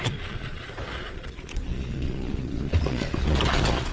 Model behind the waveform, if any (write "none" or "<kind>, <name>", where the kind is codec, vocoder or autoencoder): vocoder, Vocos